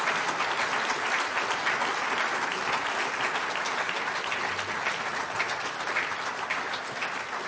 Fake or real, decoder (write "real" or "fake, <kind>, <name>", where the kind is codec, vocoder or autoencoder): real